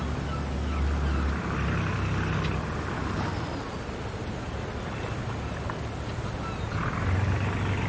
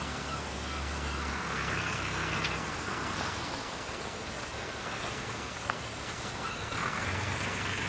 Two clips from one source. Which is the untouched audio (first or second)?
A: first